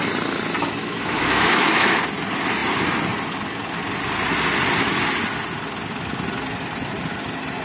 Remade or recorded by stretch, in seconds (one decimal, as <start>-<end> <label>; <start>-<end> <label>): 0.0-0.8 recorded; 0.8-2.0 remade; 2.0-7.6 recorded